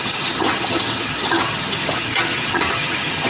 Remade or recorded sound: remade